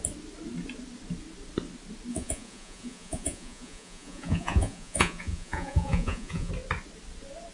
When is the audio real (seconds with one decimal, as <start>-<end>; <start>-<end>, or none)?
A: 0.0-2.1; 6.5-7.5